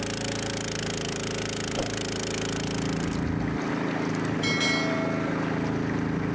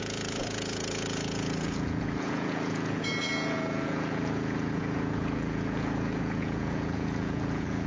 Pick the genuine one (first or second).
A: first